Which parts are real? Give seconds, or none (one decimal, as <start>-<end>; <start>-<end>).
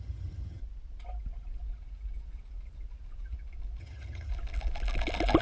0.6-3.8; 4.3-5.4